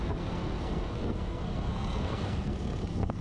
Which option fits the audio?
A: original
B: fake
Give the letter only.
B